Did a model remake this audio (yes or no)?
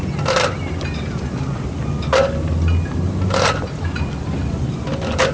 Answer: no